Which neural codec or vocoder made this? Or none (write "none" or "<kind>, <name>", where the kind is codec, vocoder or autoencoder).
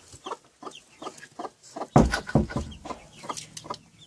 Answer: none